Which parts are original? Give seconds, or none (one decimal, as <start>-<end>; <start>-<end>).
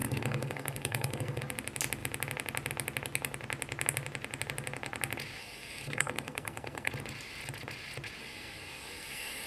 1.4-5.4; 6.9-8.2